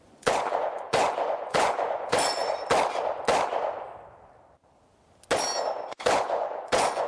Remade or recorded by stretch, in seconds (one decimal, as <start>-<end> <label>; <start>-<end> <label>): 0.0-2.4 remade; 2.4-5.7 recorded; 5.7-7.1 remade